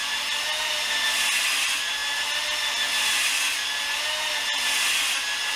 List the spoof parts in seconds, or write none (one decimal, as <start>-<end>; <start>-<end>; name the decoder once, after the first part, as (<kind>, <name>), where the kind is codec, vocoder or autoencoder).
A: none